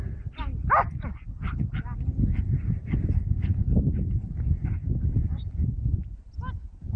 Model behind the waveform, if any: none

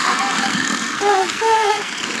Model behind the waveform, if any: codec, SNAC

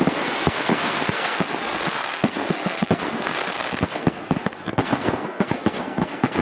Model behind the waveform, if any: codec, SNAC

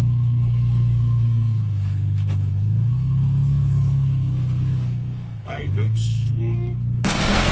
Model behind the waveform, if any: codec, SNAC